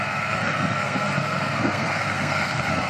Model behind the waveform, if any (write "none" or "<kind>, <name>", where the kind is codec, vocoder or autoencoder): codec, SNAC